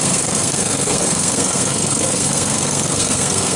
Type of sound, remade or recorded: remade